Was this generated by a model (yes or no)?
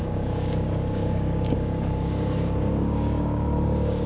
yes